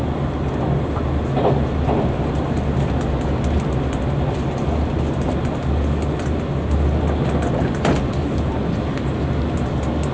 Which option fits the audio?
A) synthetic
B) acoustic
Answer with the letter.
B